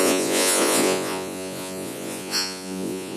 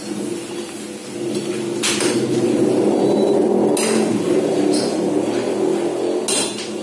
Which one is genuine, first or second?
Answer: second